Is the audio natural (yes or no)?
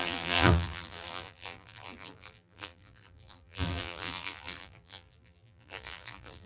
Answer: no